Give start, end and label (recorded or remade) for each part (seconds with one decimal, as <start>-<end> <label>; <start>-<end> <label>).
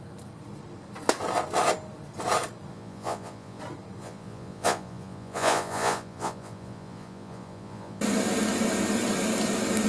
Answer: 0.0-2.7 recorded; 2.7-3.6 remade; 3.6-4.0 recorded; 4.0-8.0 remade; 8.0-9.9 recorded